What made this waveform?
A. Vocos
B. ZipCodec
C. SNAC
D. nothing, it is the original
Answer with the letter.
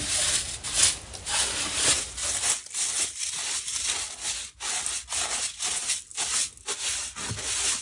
D